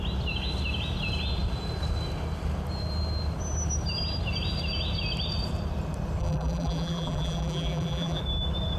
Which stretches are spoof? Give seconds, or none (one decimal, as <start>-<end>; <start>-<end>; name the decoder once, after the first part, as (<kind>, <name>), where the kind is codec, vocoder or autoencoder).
6.2-8.2 (vocoder, BigVGAN v2)